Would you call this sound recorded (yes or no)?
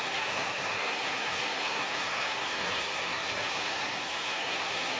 no